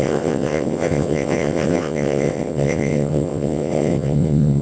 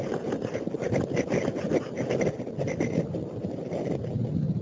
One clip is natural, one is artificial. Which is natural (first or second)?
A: second